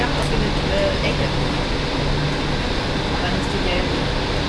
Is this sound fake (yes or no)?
no